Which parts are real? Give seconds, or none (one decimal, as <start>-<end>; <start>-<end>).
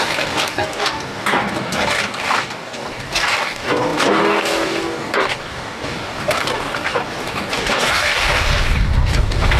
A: none